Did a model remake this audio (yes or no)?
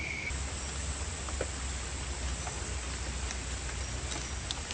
no